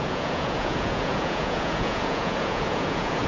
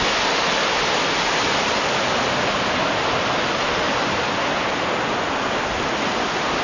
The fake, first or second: first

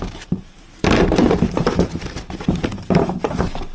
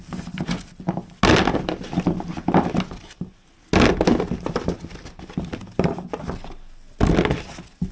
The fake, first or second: first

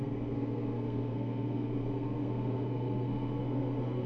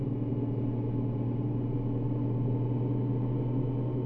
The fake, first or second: first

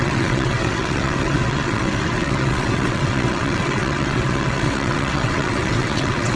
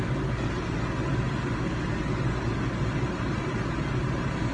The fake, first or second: first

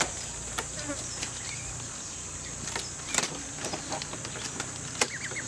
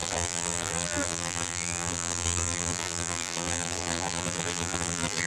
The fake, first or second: second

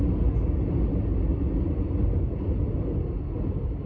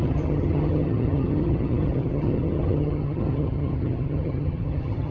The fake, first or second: second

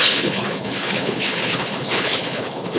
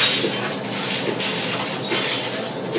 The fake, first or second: first